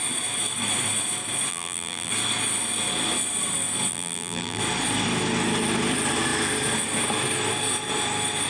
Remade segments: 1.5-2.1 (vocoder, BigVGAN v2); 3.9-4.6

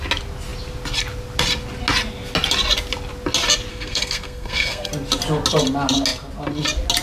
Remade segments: 3.7-4.9 (codec, SNAC)